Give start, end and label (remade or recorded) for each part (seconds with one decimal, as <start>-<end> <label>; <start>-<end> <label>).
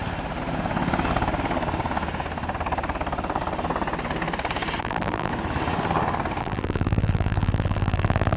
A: 0.0-4.8 recorded; 4.8-5.3 remade; 5.3-6.4 recorded; 6.4-8.4 remade